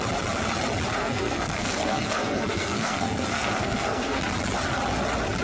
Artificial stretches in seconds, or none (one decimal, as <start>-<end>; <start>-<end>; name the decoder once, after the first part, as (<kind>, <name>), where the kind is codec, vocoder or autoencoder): 1.0-4.2 (codec, SNAC)